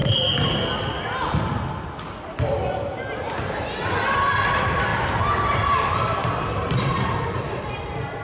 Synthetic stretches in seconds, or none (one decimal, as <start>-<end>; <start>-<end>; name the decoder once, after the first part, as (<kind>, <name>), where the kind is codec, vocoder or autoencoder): 0.8-1.5 (vocoder, BigVGAN v2); 2.4-8.2